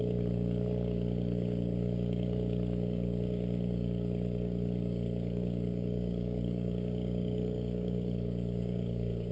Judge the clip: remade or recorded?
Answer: remade